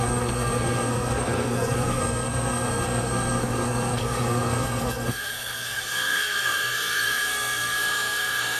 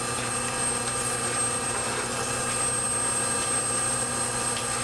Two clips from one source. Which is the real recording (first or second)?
second